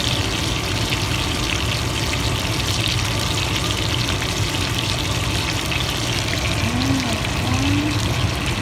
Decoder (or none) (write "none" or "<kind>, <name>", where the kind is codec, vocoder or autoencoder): none